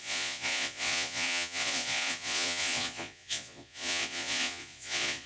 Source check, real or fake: fake